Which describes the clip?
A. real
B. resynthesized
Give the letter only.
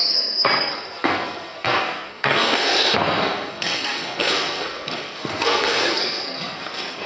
B